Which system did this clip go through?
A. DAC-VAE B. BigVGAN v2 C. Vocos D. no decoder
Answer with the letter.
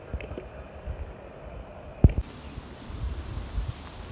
B